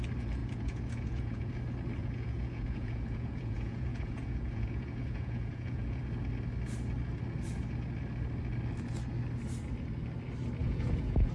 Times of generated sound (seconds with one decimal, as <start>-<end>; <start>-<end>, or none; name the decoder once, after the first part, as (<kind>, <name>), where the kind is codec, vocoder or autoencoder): 0.4-1.5 (vocoder, Vocos); 2.0-6.0; 10.6-11.3

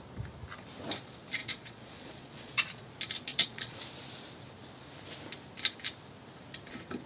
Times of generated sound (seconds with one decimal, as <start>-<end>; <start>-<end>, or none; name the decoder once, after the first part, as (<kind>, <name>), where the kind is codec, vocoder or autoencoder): 1.4-2.9 (vocoder, Vocos); 3.3-3.8

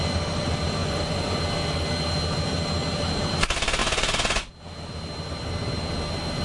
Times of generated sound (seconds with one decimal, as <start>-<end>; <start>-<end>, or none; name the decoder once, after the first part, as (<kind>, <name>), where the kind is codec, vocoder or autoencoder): 0.8-1.4 (vocoder, Vocos); 3.8-4.5

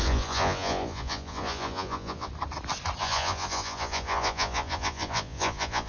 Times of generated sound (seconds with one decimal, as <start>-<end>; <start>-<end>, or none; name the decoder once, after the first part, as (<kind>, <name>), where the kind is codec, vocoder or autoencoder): 0.0-2.3 (vocoder, Vocos); 3.0-5.9

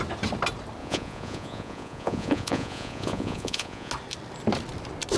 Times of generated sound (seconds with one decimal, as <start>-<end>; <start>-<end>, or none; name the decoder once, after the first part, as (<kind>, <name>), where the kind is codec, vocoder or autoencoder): 0.8-3.9 (vocoder, Vocos)

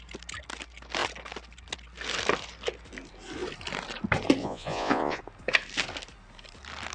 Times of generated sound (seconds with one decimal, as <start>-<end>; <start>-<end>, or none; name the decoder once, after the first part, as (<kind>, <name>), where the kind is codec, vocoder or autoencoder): 4.4-5.2 (vocoder, Vocos)